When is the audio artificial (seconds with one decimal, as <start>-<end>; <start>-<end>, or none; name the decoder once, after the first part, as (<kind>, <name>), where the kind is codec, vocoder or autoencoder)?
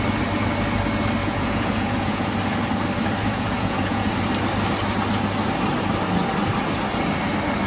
1.2-2.3 (vocoder, Vocos); 3.2-4.1